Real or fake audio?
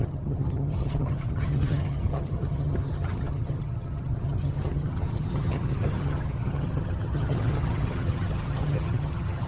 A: fake